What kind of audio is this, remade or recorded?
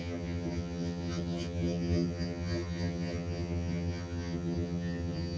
remade